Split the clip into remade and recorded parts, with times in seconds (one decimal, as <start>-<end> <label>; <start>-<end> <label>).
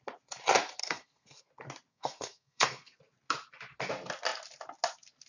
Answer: 0.0-0.8 recorded; 0.8-1.5 remade; 1.5-1.9 recorded; 1.9-3.0 remade; 3.0-5.3 recorded